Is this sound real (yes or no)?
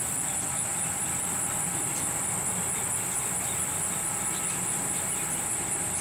yes